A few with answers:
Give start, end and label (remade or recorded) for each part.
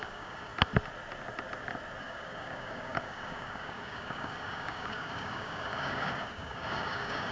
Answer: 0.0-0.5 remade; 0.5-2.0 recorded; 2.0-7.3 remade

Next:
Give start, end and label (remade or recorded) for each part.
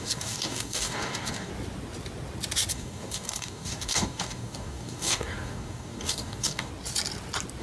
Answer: 0.0-1.5 remade; 1.5-2.7 recorded; 2.7-6.7 remade; 6.7-7.6 recorded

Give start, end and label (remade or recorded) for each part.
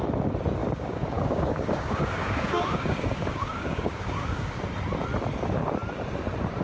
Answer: 0.0-0.6 recorded; 0.6-4.6 remade; 4.6-6.6 recorded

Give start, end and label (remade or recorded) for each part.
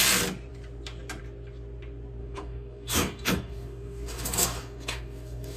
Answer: 0.0-2.2 recorded; 2.2-5.6 remade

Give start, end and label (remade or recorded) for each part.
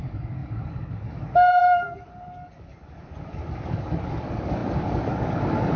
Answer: 0.0-5.8 remade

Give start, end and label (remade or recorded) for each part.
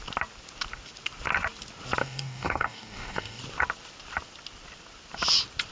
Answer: 0.0-2.0 recorded; 2.0-3.4 remade; 3.4-5.7 recorded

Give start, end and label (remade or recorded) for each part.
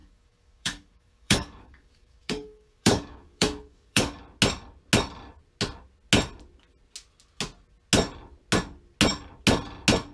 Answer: 0.0-4.2 remade; 4.2-10.1 recorded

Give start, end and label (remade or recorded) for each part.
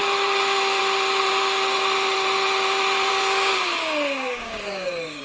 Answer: 0.0-3.1 recorded; 3.1-5.2 remade